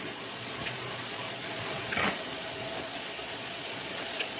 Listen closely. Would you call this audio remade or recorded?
remade